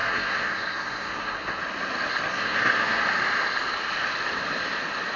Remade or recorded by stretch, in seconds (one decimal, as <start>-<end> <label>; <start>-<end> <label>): 0.0-1.6 remade; 1.6-2.3 recorded; 2.3-3.0 remade; 3.0-5.2 recorded